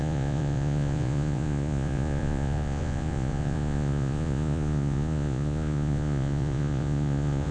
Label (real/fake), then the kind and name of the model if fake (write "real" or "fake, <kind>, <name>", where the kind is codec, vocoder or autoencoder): fake, vocoder, Vocos